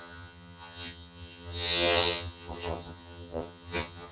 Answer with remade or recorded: remade